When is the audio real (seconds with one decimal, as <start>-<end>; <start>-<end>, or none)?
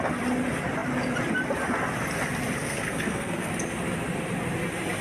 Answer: 0.0-2.6; 3.5-5.0